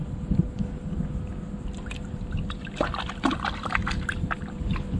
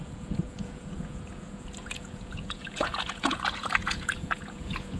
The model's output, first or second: second